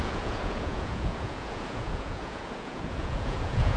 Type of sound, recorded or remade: remade